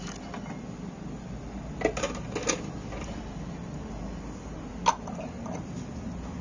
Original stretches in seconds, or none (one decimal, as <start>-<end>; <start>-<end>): 0.0-6.4